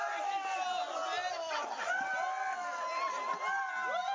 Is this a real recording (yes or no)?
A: yes